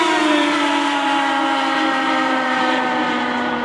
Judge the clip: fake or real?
fake